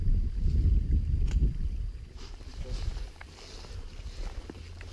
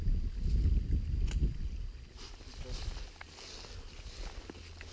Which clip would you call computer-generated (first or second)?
first